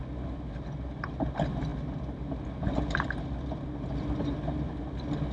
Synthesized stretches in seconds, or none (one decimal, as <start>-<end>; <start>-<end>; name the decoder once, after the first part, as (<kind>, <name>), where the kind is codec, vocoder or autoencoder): none